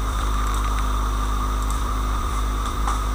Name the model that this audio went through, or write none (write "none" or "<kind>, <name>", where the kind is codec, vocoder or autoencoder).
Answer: vocoder, BigVGAN v2